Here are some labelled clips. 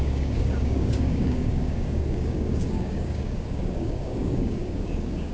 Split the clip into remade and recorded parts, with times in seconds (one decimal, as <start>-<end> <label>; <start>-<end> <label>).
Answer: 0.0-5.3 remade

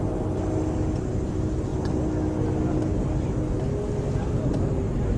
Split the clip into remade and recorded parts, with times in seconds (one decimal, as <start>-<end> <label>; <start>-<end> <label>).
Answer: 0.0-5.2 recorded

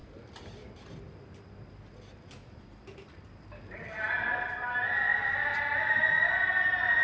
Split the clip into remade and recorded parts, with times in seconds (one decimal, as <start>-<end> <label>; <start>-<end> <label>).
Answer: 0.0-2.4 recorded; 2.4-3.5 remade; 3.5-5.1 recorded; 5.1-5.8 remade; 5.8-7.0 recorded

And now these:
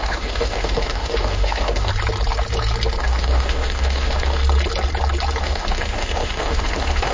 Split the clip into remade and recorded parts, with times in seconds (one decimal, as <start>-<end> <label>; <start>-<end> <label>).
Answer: 0.0-1.9 remade; 1.9-3.0 recorded; 3.0-4.4 remade; 4.4-5.4 recorded; 5.4-7.1 remade

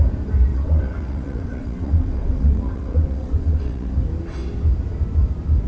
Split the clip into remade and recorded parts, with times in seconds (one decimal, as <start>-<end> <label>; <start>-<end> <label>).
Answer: 0.0-0.5 recorded; 0.5-3.9 remade; 3.9-5.7 recorded

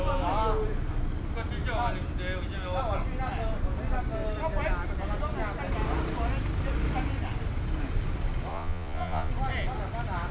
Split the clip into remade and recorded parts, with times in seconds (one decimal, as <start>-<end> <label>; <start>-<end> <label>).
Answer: 0.0-8.5 recorded; 8.5-9.3 remade; 9.3-10.3 recorded

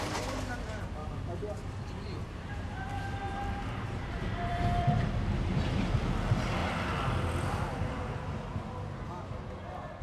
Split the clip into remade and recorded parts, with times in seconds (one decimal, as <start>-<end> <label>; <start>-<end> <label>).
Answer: 0.0-1.0 remade; 1.0-3.8 recorded; 3.8-6.6 remade; 6.6-10.0 recorded